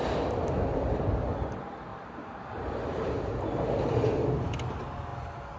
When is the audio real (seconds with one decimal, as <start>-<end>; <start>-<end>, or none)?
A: 0.0-1.9; 3.7-5.6

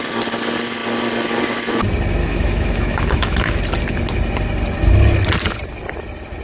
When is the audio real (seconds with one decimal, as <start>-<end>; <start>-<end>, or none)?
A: 0.0-2.2; 3.6-6.4

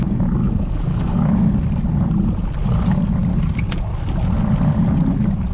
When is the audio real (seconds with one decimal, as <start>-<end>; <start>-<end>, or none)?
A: 0.0-0.4; 1.3-5.5

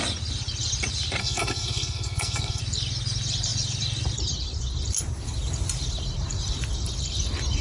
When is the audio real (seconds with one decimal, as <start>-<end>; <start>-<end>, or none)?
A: 0.0-1.2; 2.6-7.6

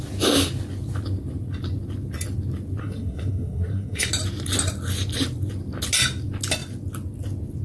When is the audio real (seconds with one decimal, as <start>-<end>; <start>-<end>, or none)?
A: 0.0-2.8; 4.1-7.6

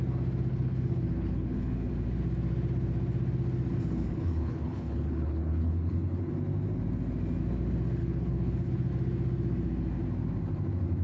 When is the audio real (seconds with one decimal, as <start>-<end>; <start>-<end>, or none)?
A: 0.0-0.5; 1.9-3.7; 6.3-8.0; 8.9-11.0

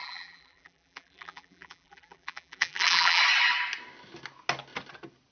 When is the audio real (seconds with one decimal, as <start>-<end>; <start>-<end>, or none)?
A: 3.2-5.3

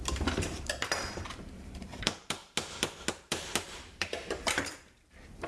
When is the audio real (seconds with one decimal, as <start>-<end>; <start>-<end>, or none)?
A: 2.4-3.1